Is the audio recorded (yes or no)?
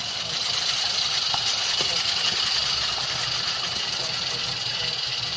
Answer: yes